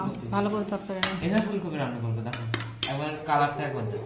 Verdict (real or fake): real